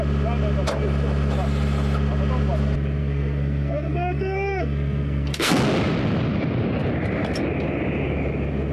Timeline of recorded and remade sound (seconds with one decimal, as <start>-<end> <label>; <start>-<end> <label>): 0.0-3.0 recorded; 3.0-5.6 remade; 5.6-8.7 recorded